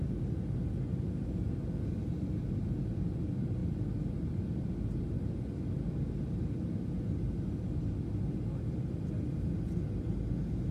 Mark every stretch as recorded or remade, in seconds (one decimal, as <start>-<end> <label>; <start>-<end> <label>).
0.0-10.7 recorded